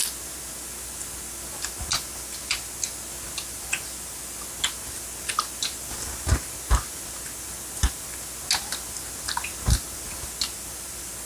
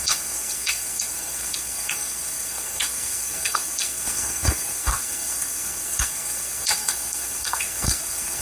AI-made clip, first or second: second